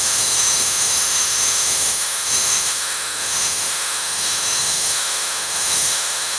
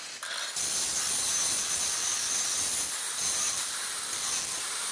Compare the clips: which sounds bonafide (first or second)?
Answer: second